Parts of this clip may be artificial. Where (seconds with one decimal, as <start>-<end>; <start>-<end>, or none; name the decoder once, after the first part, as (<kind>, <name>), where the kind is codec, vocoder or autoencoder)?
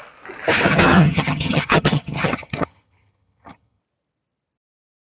0.7-3.8 (vocoder, HiFi-GAN)